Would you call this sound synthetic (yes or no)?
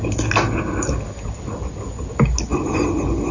no